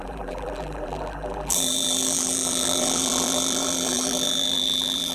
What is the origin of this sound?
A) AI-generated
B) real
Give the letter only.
A